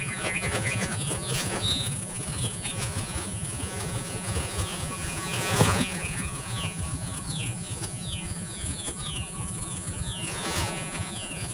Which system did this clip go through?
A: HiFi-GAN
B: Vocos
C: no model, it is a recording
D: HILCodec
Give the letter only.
B